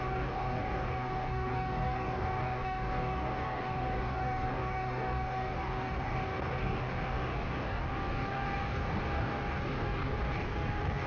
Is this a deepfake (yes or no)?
yes